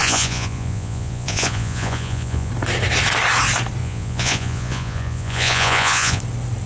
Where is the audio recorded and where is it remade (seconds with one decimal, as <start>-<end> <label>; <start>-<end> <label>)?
0.0-2.5 remade; 2.5-3.8 recorded; 3.8-6.2 remade; 6.2-6.7 recorded